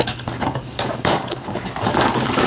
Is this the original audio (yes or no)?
no